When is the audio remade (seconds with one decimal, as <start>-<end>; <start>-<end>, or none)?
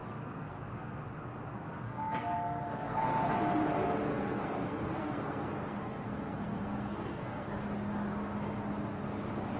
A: 0.0-1.0; 1.5-3.3; 4.1-7.5